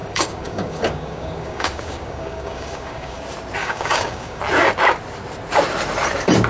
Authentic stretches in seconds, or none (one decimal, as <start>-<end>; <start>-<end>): 3.2-3.6; 4.4-6.5